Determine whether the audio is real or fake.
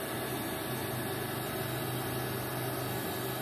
real